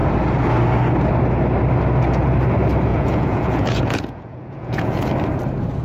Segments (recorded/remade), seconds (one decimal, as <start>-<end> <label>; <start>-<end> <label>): 0.0-2.9 recorded; 2.9-5.1 remade; 5.1-5.8 recorded